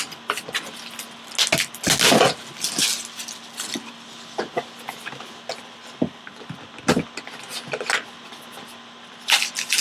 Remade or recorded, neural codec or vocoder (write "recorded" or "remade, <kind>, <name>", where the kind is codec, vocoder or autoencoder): recorded